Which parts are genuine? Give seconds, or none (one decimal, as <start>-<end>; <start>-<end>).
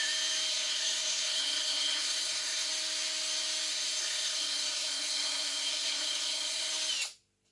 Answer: 0.0-0.5; 2.7-3.7; 6.7-7.5